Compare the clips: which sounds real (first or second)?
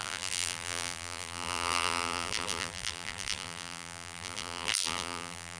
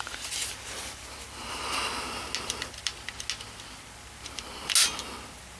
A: second